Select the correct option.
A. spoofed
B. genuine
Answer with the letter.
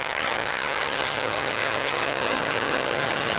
A